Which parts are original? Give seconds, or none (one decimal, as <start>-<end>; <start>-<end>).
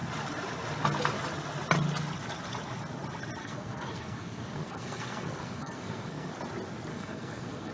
0.0-3.4; 6.3-6.9